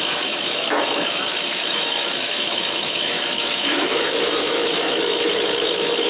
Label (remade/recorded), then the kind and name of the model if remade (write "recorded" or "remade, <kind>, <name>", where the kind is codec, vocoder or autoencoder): remade, autoencoder, DAC-VAE